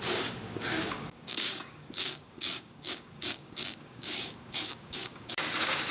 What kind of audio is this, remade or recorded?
remade